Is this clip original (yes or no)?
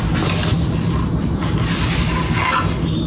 yes